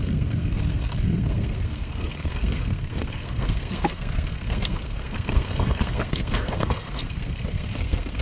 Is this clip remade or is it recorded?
remade